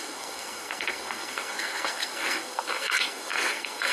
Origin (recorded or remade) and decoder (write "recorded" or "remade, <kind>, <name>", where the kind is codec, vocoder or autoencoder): remade, codec, SNAC